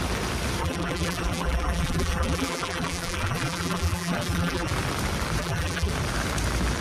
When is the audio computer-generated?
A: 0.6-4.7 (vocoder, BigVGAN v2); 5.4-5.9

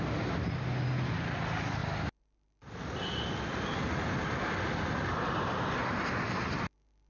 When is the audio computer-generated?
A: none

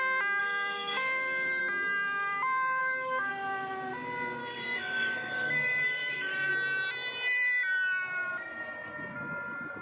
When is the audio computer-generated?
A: 0.4-1.6 (codec, DAC); 2.8-3.3; 4.4-6.5

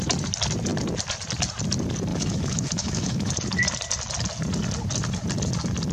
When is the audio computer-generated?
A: 2.1-3.3 (autoencoder, DAC-VAE)

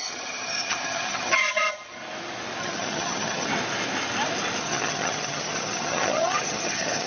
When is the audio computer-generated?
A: 0.0-2.0 (vocoder, HiFi-GAN); 2.6-3.5; 4.6-7.1

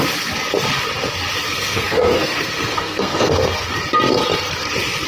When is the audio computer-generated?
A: 1.5-3.7 (codec, SNAC)

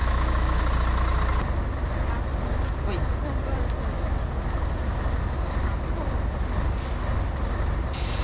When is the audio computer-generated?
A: 0.0-0.6 (autoencoder, DAC-VAE)